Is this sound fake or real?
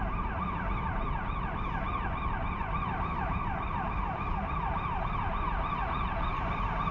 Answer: real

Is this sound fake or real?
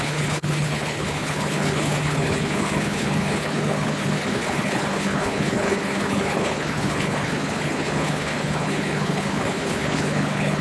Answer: fake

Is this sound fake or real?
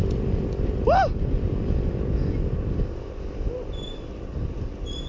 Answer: real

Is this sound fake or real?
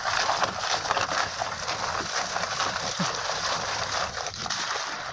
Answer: real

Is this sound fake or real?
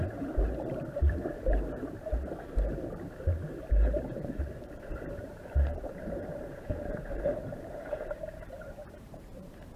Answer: fake